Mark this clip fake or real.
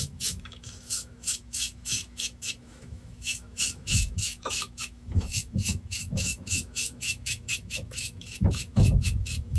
fake